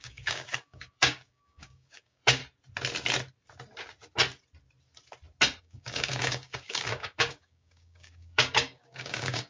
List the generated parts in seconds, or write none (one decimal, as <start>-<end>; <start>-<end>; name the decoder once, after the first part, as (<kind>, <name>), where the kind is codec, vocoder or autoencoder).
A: 0.0-2.4 (codec, DAC); 5.6-9.5